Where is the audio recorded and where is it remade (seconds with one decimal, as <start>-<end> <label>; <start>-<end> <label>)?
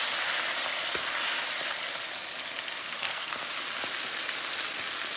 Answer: 0.0-2.8 recorded; 2.8-3.4 remade; 3.4-5.2 recorded